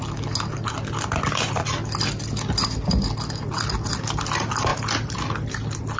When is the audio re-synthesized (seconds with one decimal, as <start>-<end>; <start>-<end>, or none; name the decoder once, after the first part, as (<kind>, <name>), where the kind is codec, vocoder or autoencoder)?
none